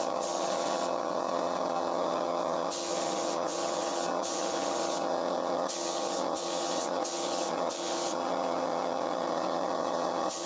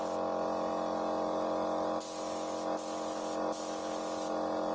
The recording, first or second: second